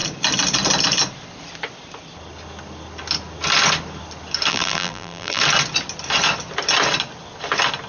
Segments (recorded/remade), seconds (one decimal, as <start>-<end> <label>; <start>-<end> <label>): 0.0-4.5 recorded; 4.5-5.4 remade; 5.4-7.9 recorded